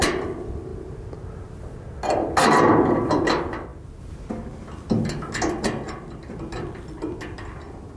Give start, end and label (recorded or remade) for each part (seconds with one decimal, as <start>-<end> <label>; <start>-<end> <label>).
0.0-8.0 recorded